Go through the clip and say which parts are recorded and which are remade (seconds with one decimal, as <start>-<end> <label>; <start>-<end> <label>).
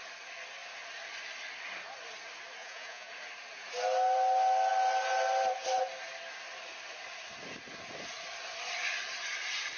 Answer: 0.0-2.6 recorded; 2.6-3.1 remade; 3.1-9.8 recorded